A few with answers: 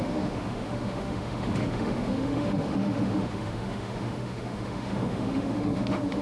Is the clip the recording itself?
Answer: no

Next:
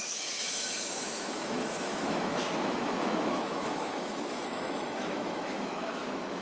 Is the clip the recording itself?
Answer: no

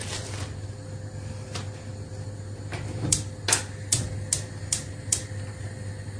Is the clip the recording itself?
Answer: yes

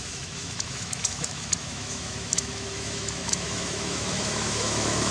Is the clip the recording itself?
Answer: no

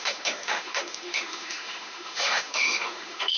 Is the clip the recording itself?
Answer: no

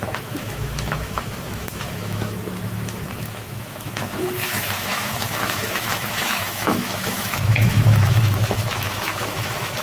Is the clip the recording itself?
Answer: no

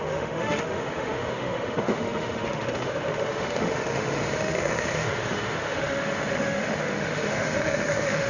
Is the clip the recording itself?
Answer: no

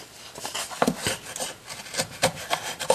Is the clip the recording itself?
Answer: yes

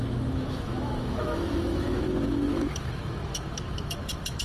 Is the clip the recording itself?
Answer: no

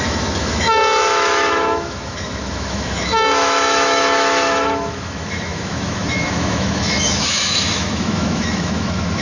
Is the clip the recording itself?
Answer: no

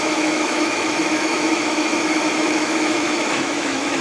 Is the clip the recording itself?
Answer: no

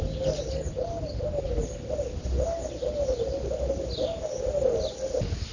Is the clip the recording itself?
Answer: yes